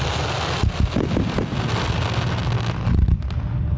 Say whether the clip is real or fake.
real